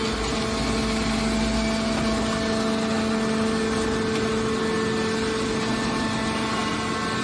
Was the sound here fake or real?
real